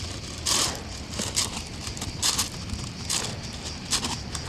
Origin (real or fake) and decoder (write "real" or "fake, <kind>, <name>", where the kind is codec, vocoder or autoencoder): real